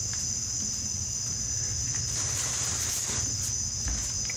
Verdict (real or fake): real